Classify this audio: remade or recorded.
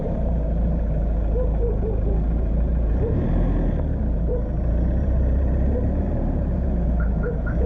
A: remade